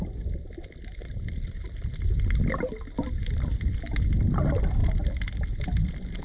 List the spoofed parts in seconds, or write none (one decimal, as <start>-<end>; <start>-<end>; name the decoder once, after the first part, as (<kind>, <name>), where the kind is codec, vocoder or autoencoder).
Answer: none